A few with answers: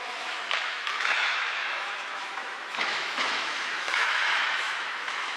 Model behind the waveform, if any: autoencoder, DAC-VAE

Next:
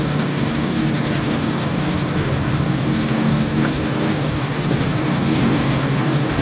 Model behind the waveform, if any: codec, DAC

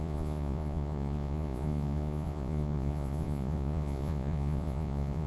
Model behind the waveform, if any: vocoder, Vocos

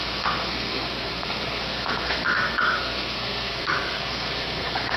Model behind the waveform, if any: codec, SNAC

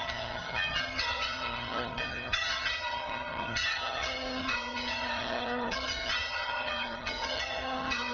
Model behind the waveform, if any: vocoder, HiFi-GAN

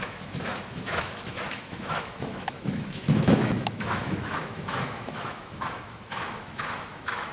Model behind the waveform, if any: autoencoder, DAC-VAE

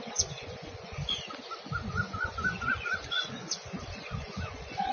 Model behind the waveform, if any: vocoder, Vocos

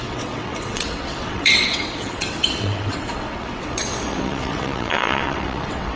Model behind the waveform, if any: vocoder, WaveNeXt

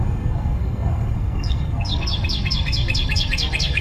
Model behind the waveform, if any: codec, SNAC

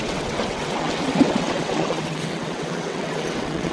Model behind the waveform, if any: vocoder, WaveNeXt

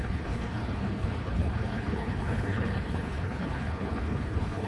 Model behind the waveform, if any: codec, HILCodec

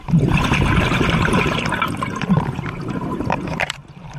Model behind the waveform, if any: vocoder, BigVGAN v2